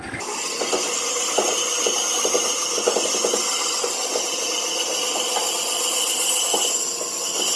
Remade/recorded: recorded